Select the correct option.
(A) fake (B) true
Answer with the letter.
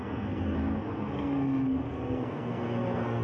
A